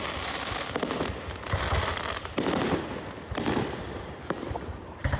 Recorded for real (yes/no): no